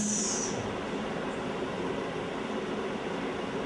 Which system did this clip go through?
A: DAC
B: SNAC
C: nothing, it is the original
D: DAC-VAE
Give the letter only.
C